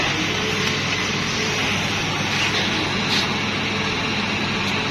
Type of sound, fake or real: real